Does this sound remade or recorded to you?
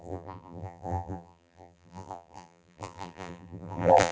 remade